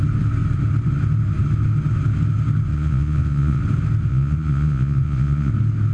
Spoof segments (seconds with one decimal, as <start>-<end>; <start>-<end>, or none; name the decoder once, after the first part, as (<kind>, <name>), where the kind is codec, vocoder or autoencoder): 2.7-3.6 (vocoder, Vocos); 4.1-5.5